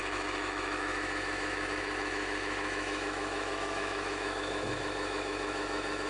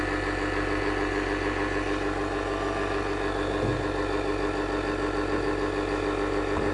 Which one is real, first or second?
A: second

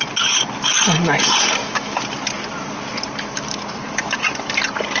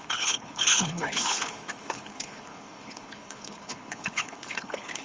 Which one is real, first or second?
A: first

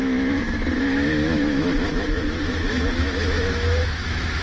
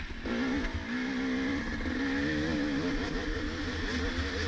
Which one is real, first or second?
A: second